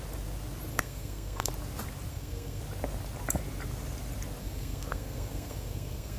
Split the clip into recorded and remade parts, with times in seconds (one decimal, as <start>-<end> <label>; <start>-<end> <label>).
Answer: 0.0-0.7 recorded; 0.7-1.5 remade; 1.5-2.1 recorded; 2.1-2.6 remade; 2.6-4.4 recorded; 4.4-6.2 remade